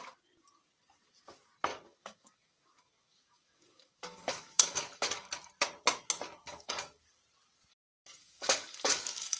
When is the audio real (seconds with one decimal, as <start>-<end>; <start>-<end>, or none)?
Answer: 0.0-1.7; 5.3-6.4; 7.2-7.7